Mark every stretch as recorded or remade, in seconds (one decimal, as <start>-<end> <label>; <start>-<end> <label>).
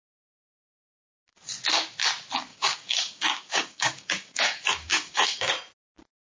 0.0-2.5 recorded; 2.5-5.5 remade; 5.5-6.3 recorded